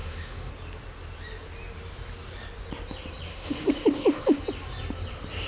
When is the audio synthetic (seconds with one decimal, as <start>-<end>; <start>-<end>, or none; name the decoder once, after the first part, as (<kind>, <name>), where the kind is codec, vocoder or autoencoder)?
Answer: 0.0-0.5 (autoencoder, DAC-VAE); 3.3-4.4